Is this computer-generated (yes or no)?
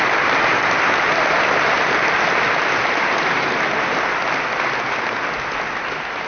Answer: no